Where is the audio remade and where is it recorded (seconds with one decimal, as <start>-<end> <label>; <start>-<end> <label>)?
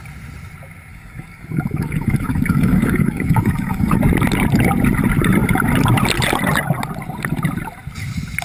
0.0-0.9 recorded; 0.9-4.0 remade; 4.0-8.4 recorded